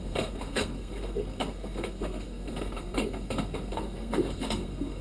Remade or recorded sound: remade